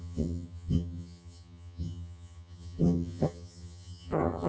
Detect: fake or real fake